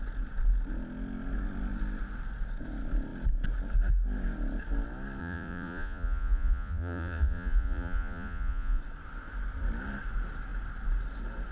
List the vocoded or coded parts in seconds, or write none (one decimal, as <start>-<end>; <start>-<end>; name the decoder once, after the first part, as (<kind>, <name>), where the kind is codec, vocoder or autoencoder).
5.2-8.8 (vocoder, Vocos)